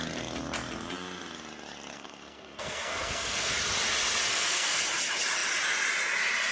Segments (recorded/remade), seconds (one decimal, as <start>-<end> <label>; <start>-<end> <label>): 0.0-1.9 recorded; 1.9-3.5 remade; 3.5-4.3 recorded; 4.3-4.8 remade; 4.8-6.5 recorded